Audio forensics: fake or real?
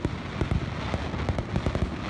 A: real